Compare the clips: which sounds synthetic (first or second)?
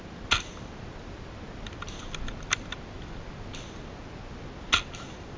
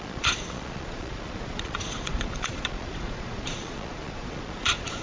second